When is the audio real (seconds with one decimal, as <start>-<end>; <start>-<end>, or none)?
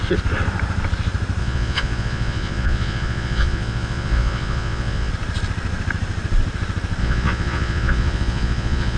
0.0-1.4; 5.1-7.0